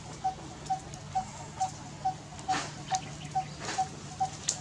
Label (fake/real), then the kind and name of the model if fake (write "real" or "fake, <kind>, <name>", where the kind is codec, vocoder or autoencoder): real